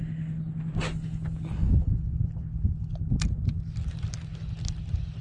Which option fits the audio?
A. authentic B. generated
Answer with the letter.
A